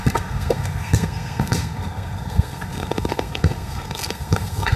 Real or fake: fake